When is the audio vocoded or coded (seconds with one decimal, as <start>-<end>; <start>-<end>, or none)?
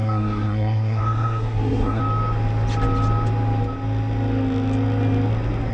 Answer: 0.0-2.0